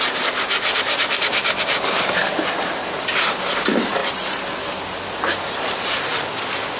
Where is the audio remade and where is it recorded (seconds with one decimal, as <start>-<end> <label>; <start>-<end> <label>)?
0.0-2.2 recorded; 2.2-3.1 remade; 3.1-6.8 recorded